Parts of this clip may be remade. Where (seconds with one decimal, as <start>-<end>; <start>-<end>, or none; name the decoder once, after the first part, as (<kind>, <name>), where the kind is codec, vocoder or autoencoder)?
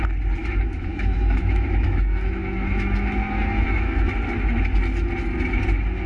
0.4-4.1 (autoencoder, DAC-VAE)